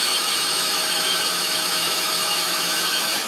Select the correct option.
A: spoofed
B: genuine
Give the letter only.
A